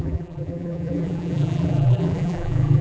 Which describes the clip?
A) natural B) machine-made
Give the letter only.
B